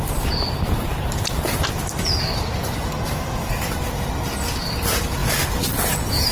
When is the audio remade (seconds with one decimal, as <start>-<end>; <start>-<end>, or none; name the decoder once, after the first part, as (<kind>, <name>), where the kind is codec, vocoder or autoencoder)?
0.0-5.2 (vocoder, BigVGAN v2)